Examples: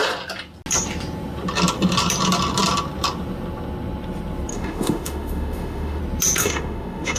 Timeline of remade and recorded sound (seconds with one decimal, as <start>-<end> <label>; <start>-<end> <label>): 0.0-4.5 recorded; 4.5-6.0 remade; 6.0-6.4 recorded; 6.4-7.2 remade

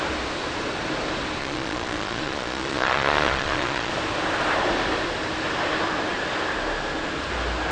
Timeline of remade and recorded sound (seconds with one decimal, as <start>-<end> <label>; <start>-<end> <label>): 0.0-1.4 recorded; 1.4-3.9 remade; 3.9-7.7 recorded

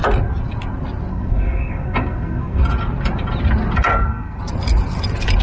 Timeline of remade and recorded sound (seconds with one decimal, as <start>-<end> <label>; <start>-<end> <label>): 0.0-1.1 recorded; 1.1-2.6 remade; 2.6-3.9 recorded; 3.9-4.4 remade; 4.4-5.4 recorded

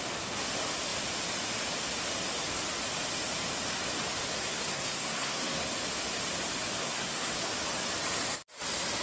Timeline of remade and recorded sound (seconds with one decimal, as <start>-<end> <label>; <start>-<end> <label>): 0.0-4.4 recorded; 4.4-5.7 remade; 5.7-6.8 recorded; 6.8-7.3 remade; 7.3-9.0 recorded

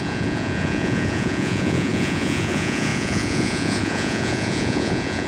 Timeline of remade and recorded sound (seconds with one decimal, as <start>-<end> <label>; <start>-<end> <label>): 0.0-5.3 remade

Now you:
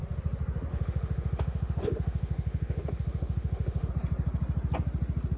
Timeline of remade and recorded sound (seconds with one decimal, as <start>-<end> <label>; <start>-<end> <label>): 0.0-0.7 recorded; 0.7-3.9 remade; 3.9-5.4 recorded